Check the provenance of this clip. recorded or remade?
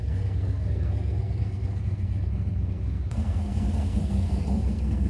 remade